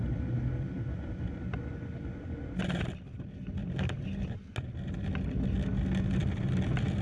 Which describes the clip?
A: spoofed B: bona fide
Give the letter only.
B